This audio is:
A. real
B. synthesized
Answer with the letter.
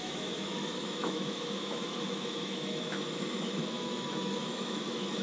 B